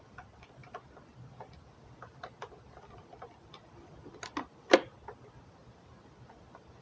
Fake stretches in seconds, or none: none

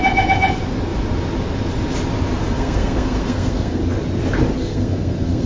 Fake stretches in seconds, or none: 2.4-3.8 (codec, SNAC); 4.6-5.5

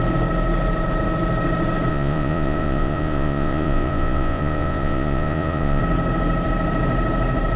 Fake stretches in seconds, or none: 1.9-5.8 (vocoder, Vocos)

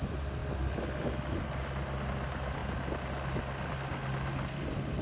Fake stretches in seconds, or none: none

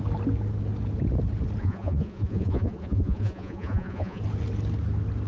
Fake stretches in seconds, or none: 1.6-4.2 (vocoder, Vocos)

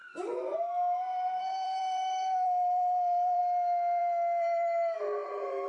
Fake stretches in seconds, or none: 0.0-3.4 (vocoder, BigVGAN v2); 4.0-5.0

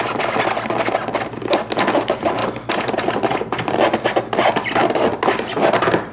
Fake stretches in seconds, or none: 2.4-5.3 (vocoder, BigVGAN v2)